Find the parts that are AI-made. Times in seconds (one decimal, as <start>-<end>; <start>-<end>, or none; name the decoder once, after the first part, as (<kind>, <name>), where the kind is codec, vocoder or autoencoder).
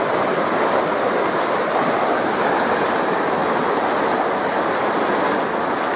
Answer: none